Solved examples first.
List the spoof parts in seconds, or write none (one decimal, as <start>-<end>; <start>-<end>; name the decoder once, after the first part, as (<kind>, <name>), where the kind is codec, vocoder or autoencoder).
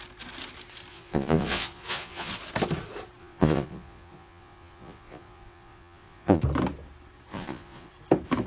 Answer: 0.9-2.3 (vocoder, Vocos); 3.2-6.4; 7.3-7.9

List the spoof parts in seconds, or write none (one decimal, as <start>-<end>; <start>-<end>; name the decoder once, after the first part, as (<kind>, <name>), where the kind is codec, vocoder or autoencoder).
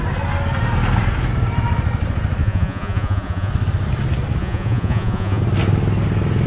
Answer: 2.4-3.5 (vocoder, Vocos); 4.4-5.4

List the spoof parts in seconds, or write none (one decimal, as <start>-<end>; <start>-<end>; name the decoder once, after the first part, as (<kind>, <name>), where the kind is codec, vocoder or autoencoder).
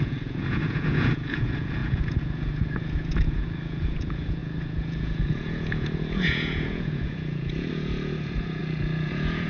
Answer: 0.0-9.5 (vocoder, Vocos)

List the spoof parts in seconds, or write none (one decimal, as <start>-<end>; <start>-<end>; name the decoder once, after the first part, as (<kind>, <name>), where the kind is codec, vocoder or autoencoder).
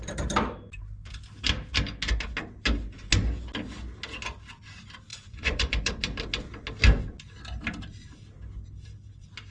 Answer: 5.1-5.9 (vocoder, Vocos)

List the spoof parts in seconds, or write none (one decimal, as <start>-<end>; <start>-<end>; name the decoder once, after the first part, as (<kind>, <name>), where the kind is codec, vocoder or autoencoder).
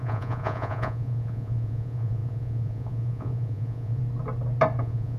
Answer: 0.0-4.0 (vocoder, Vocos); 4.8-5.2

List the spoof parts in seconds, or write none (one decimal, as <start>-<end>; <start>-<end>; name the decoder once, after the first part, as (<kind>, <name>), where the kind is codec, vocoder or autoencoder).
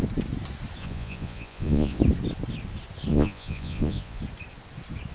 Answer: 0.8-2.0 (vocoder, Vocos); 3.1-4.2